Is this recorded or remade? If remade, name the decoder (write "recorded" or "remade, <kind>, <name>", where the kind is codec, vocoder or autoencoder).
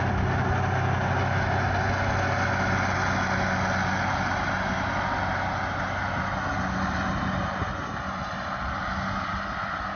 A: recorded